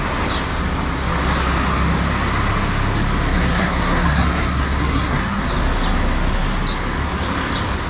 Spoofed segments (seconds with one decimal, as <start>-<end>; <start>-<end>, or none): 3.3-5.4